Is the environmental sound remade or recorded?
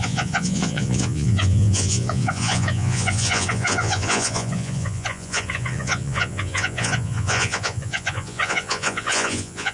remade